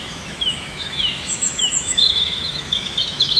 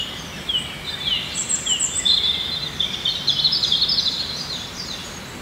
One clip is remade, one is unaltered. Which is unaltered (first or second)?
second